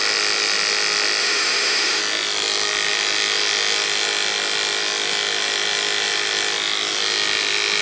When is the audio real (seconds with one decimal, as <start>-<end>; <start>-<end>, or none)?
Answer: 0.0-1.2; 2.0-7.8